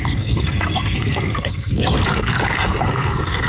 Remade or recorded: remade